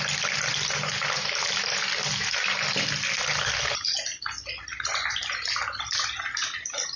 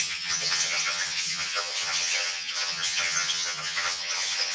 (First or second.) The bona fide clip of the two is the first